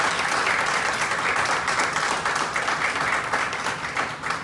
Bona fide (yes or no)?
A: yes